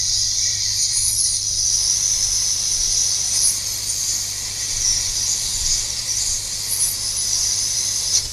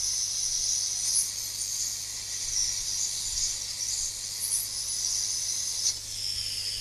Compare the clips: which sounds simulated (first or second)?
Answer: first